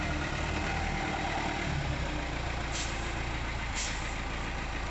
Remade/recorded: recorded